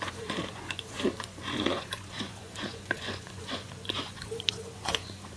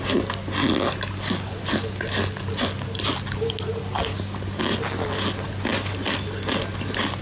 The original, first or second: second